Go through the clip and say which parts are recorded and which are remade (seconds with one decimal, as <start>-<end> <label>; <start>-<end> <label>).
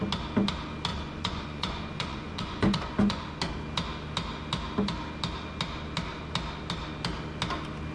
0.0-0.9 recorded; 0.9-3.4 remade; 3.4-7.9 recorded